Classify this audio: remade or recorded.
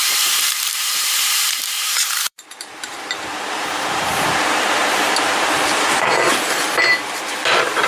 remade